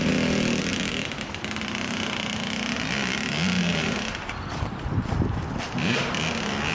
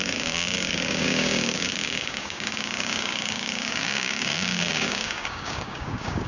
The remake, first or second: second